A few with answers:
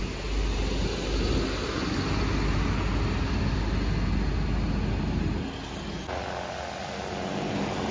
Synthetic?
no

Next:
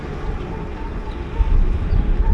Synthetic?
no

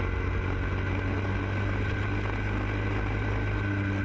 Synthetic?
no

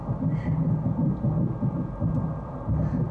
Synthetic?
no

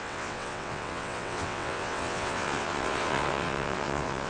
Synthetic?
yes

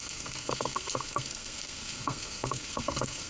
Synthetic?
yes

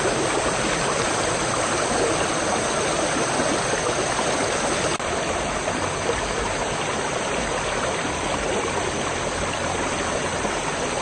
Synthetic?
no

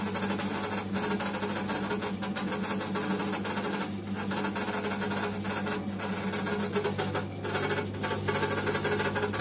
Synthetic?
no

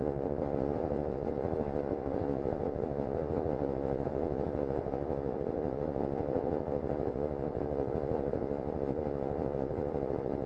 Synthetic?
yes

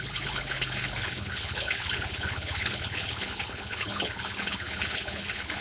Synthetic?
yes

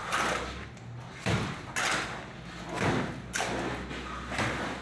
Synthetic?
no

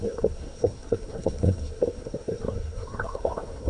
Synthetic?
yes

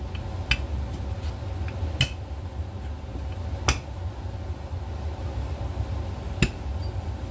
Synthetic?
no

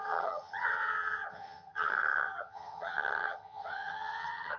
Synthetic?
yes